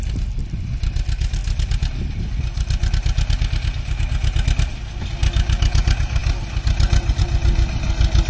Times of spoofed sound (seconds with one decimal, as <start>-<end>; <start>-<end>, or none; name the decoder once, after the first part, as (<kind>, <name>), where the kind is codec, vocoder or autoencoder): none